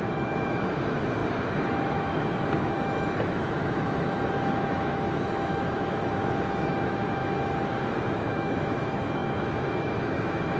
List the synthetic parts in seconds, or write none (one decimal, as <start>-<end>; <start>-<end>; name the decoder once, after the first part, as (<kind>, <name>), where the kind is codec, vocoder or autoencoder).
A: 0.0-7.2 (autoencoder, DAC-VAE); 8.3-10.6